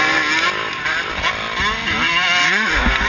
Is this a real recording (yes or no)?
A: yes